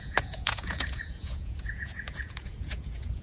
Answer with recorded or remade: remade